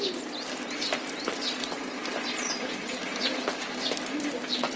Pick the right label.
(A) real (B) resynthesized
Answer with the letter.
A